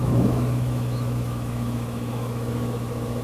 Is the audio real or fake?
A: fake